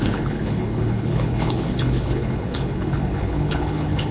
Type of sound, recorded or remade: remade